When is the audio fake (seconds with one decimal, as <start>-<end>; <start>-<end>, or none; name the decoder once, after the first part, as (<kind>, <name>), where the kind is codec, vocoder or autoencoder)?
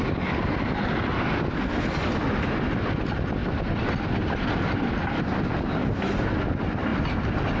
none